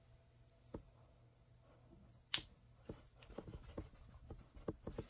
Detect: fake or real real